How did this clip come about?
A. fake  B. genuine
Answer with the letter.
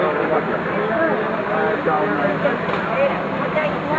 B